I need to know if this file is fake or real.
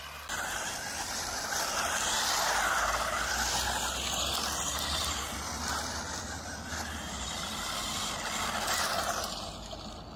real